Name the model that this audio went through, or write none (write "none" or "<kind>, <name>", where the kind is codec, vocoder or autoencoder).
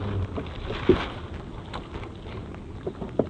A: none